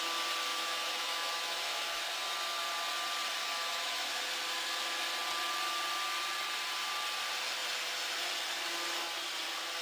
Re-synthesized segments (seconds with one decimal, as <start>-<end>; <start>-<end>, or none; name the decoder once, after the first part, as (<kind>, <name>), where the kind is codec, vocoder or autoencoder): 0.5-2.0 (autoencoder, DAC-VAE); 3.4-4.1